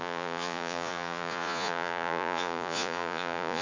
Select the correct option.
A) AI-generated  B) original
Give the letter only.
A